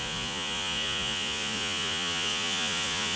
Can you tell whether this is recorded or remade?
remade